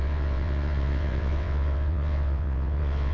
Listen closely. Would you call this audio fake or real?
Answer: fake